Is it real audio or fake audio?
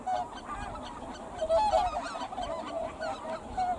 real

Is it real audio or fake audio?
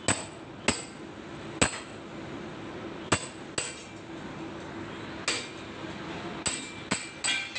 real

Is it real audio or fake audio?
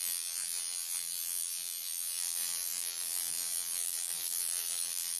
fake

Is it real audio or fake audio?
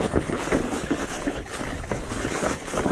fake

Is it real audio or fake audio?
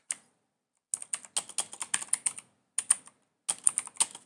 real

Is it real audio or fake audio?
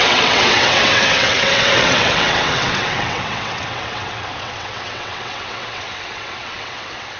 fake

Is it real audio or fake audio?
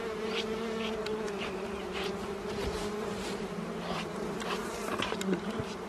fake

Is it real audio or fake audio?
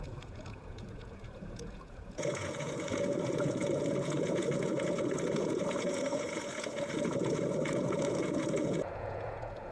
fake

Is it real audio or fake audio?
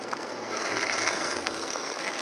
fake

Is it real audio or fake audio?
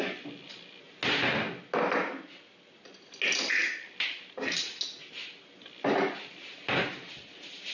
real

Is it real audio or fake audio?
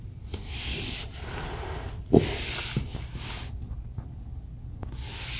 real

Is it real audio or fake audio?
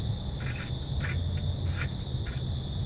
real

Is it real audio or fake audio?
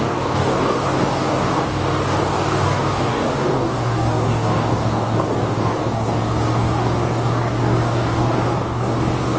fake